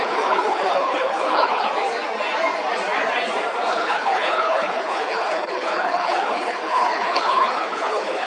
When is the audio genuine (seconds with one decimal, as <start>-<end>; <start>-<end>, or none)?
1.7-3.7